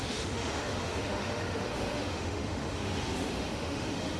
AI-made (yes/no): yes